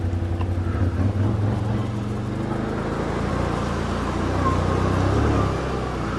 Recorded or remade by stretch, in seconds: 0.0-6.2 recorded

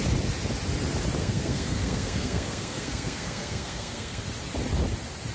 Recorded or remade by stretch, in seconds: 0.0-1.2 recorded; 1.2-4.2 remade; 4.2-5.3 recorded

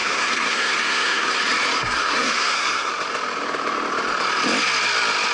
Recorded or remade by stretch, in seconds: 0.0-1.4 remade; 1.4-1.8 recorded; 1.8-2.9 remade; 2.9-5.3 recorded

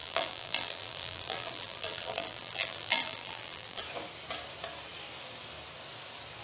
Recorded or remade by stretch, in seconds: 0.0-3.8 remade; 3.8-6.4 recorded

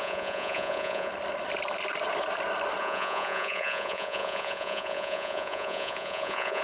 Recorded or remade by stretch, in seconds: 0.0-1.1 remade; 1.1-2.8 recorded; 2.8-6.6 remade

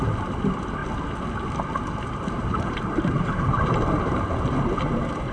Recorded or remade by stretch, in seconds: 0.0-0.8 remade; 0.8-1.9 recorded; 1.9-5.3 remade